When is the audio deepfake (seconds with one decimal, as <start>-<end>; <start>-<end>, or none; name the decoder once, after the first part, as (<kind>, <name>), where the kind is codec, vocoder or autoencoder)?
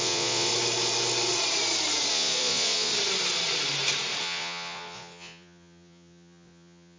0.0-0.5 (vocoder, Vocos); 2.1-2.9; 4.2-7.0